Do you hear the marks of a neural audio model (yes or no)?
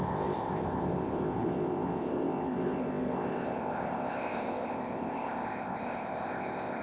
yes